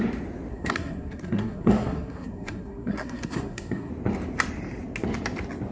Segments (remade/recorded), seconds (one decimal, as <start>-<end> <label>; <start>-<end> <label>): 0.0-0.5 recorded; 0.5-3.9 remade; 3.9-5.7 recorded